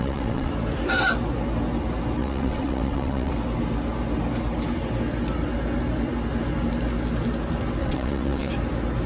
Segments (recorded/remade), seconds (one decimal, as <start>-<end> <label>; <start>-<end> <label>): 0.0-0.5 remade; 0.5-2.2 recorded; 2.2-3.3 remade; 3.3-7.8 recorded; 7.8-8.5 remade; 8.5-9.1 recorded